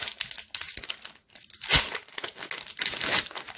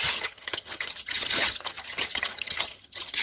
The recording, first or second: first